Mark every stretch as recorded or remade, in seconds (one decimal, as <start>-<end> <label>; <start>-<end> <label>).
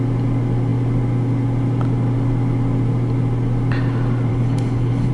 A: 0.0-4.3 recorded; 4.3-5.1 remade